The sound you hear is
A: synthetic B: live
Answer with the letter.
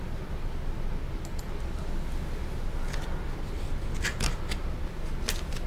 B